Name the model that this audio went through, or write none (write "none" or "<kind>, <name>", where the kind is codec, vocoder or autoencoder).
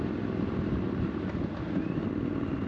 none